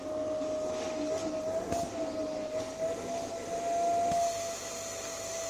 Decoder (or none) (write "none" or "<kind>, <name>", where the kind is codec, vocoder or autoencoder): none